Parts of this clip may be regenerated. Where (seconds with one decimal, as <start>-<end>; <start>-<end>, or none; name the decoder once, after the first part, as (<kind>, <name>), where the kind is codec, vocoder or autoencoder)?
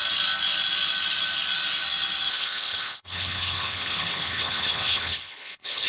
2.3-5.9 (codec, HILCodec)